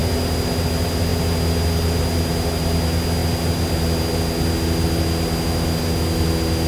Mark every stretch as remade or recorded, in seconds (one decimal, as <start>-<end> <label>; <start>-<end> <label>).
0.0-6.7 recorded